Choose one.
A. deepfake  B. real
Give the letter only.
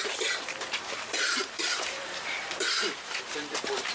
A